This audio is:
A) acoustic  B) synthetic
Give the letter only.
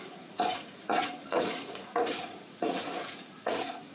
B